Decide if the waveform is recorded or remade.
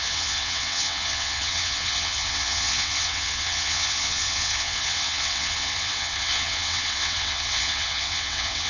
remade